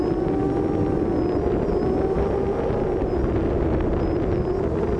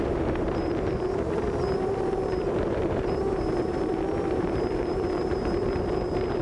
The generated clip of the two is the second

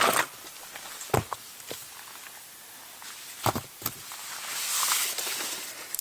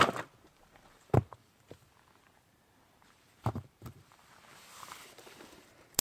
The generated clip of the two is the second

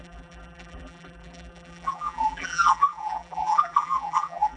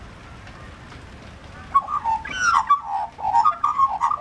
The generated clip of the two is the first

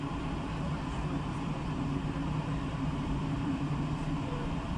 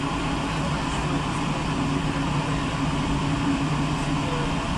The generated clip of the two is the first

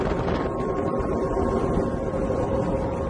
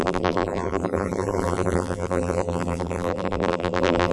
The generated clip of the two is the second